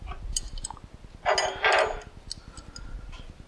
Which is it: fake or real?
real